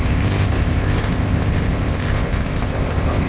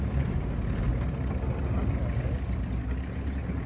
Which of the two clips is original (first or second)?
second